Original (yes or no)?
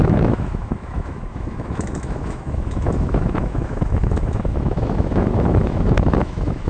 no